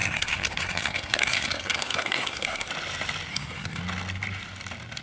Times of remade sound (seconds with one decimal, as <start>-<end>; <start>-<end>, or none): 0.0-2.7; 3.3-3.8